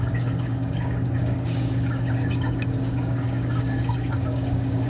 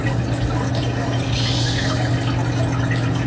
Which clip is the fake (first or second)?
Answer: first